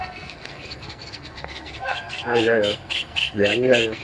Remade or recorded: remade